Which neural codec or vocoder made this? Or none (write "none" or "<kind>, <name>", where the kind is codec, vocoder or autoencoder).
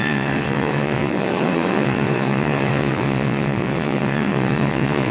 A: vocoder, WaveNeXt